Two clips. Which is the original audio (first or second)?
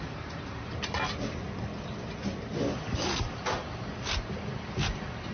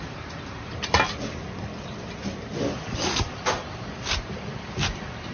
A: first